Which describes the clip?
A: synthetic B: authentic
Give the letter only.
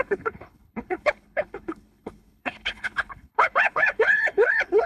A